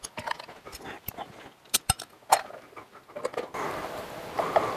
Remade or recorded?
recorded